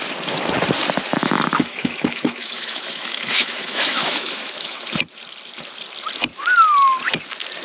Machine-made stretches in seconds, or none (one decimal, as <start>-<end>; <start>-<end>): 1.1-4.9